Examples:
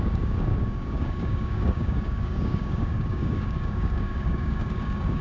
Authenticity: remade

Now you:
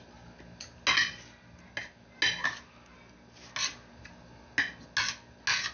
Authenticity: recorded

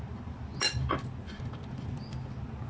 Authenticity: recorded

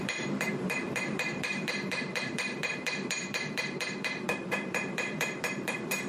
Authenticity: remade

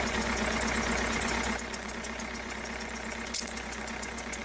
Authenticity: remade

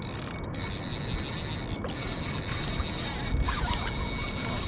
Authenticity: recorded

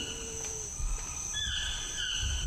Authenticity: recorded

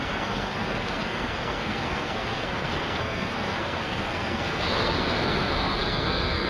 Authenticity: remade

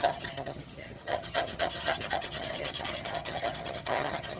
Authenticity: remade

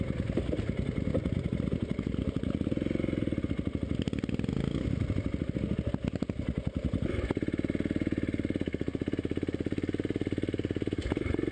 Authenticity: recorded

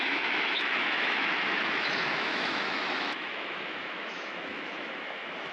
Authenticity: remade